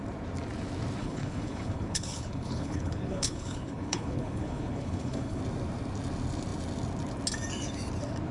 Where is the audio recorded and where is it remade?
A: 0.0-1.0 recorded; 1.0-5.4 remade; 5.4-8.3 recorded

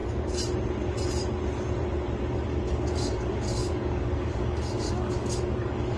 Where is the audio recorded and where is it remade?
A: 0.0-2.5 recorded; 2.5-6.0 remade

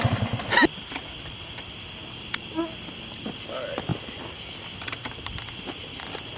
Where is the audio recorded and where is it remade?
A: 0.0-6.4 recorded

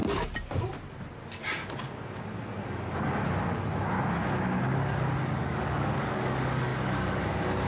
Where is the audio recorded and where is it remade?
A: 0.0-4.6 recorded; 4.6-7.7 remade

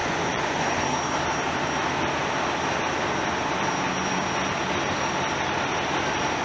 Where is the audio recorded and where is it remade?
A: 0.0-0.8 remade; 0.8-6.4 recorded

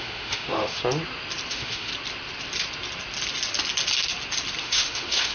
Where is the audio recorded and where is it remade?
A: 0.0-0.8 remade; 0.8-1.5 recorded; 1.5-1.9 remade; 1.9-4.6 recorded; 4.6-5.3 remade

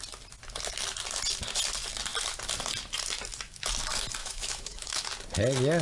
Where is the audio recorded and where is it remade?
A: 0.0-4.2 recorded; 4.2-5.0 remade; 5.0-5.8 recorded

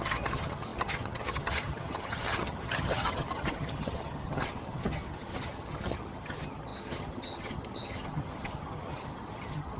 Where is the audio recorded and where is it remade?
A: 0.0-9.8 remade